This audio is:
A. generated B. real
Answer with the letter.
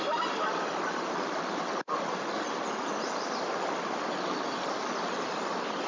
B